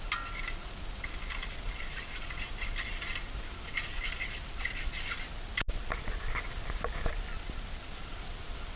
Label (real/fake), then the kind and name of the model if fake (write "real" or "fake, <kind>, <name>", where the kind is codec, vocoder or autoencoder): real